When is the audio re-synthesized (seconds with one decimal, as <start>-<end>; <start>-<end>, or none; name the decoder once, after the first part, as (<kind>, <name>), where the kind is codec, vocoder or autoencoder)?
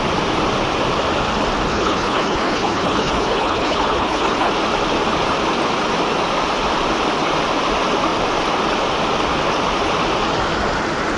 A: 1.7-4.5 (codec, HILCodec)